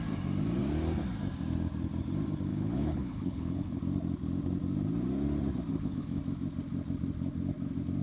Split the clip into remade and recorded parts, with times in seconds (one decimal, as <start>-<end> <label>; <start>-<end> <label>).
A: 0.0-2.5 recorded; 2.5-3.8 remade; 3.8-5.7 recorded; 5.7-6.2 remade; 6.2-8.0 recorded